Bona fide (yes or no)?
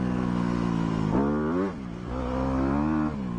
yes